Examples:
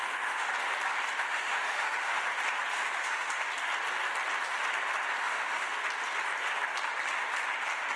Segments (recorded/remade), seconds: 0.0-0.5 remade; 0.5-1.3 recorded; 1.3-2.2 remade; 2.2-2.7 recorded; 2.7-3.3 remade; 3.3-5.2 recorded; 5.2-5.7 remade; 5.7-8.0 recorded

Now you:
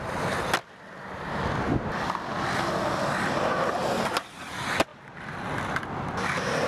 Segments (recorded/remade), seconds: 0.0-6.7 recorded

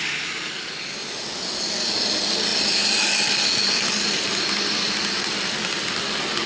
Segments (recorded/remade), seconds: 0.0-6.5 recorded

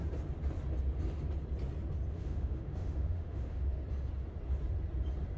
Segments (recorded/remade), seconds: 0.0-2.1 recorded; 2.1-3.8 remade; 3.8-5.4 recorded

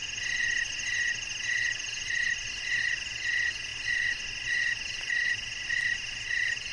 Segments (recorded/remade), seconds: 0.0-6.7 recorded

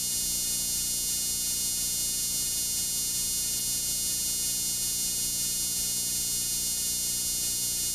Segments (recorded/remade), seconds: 0.0-7.9 recorded

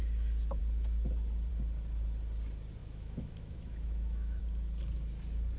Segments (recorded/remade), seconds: 0.0-2.8 recorded; 2.8-4.4 remade; 4.4-5.6 recorded

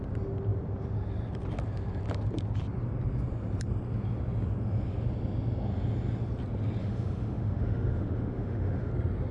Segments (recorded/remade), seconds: 0.0-6.8 recorded; 6.8-8.9 remade; 8.9-9.3 recorded